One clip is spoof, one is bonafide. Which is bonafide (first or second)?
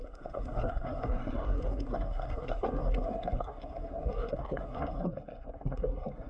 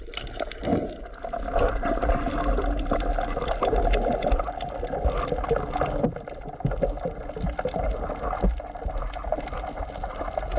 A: second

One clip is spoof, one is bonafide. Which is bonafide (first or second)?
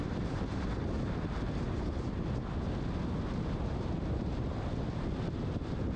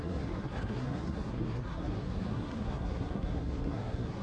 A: first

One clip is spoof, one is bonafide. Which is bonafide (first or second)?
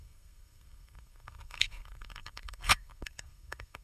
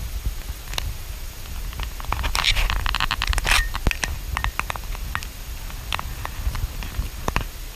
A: second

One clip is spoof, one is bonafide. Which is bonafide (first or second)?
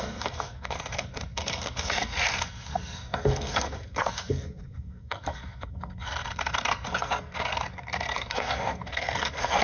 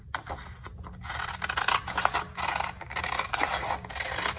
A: second